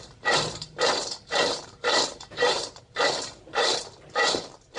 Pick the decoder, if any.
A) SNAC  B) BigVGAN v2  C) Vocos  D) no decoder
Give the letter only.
B